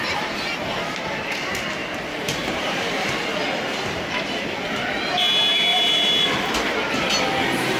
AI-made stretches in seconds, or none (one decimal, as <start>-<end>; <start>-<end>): 1.8-3.1; 5.7-6.9